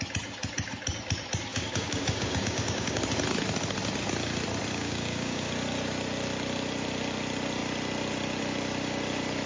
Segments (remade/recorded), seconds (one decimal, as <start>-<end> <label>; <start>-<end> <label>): 0.0-1.5 recorded; 1.5-3.0 remade; 3.0-4.7 recorded; 4.7-5.5 remade; 5.5-9.5 recorded